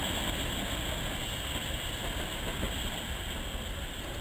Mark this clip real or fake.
real